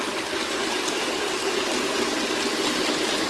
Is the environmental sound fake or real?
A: real